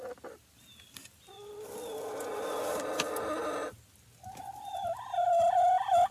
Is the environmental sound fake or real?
real